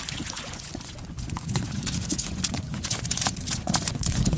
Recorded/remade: remade